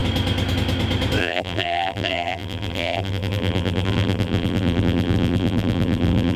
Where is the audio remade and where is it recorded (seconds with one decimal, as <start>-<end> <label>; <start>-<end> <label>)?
0.0-1.2 recorded; 1.2-6.4 remade